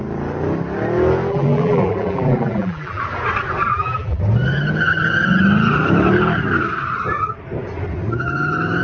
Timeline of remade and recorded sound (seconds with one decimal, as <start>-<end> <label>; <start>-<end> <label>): 0.0-1.3 recorded; 1.3-3.0 remade; 3.0-3.7 recorded; 3.7-4.2 remade; 4.2-8.8 recorded